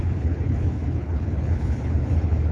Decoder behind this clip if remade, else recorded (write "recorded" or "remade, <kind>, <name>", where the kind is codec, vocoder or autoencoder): remade, codec, HILCodec